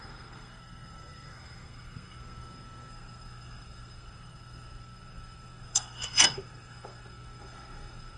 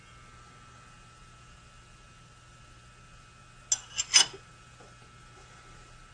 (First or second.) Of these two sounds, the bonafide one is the second